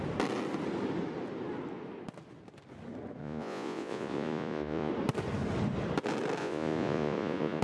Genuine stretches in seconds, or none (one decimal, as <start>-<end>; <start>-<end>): 0.0-3.2; 4.9-6.4